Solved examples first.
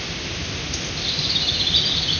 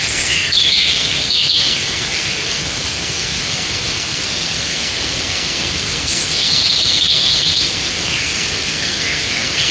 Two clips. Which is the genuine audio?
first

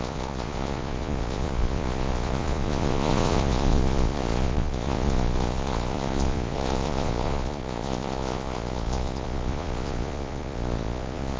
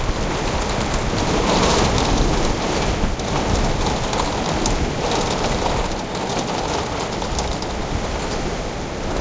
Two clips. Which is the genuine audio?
second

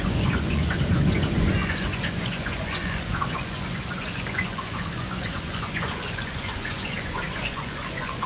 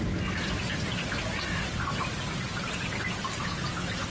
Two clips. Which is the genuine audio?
second